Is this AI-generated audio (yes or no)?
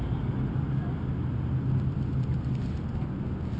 no